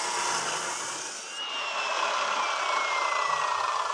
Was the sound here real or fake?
real